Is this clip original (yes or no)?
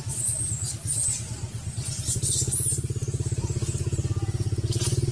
yes